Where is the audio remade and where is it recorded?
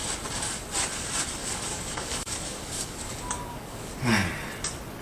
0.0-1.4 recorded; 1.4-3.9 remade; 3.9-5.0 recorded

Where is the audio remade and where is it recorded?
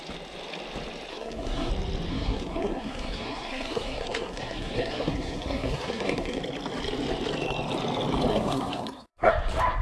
0.0-1.1 recorded; 1.1-1.7 remade; 1.7-2.1 recorded; 2.1-6.4 remade; 6.4-8.3 recorded; 8.3-9.3 remade; 9.3-9.8 recorded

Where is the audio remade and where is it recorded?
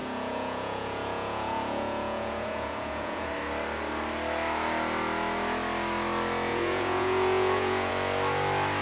0.0-3.3 remade; 3.3-6.5 recorded; 6.5-7.9 remade; 7.9-8.8 recorded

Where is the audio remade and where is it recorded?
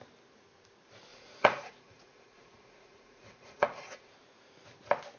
0.0-1.1 recorded; 1.1-4.1 remade; 4.1-5.2 recorded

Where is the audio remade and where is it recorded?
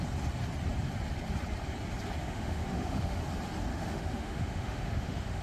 0.0-2.2 recorded; 2.2-3.2 remade; 3.2-3.7 recorded; 3.7-5.4 remade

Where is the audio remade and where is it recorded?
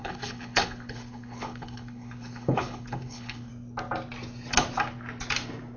0.0-3.5 remade; 3.5-5.8 recorded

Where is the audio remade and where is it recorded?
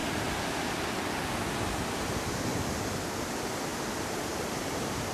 0.0-1.2 remade; 1.2-2.5 recorded; 2.5-3.3 remade; 3.3-3.7 recorded; 3.7-5.1 remade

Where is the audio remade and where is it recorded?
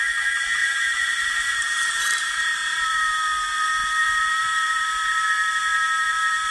0.0-0.6 recorded; 0.6-3.2 remade; 3.2-3.8 recorded; 3.8-4.8 remade; 4.8-6.5 recorded